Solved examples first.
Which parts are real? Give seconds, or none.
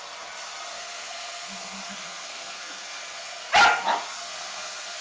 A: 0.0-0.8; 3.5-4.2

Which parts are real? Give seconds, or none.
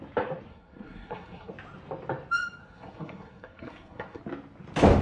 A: 0.0-0.5; 1.5-2.6; 4.2-5.0